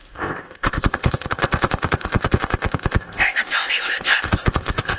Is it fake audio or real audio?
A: fake